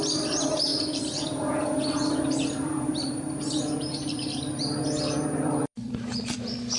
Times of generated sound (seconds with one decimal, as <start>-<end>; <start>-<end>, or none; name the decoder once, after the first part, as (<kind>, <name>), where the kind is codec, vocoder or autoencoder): 0.0-6.8 (vocoder, BigVGAN v2)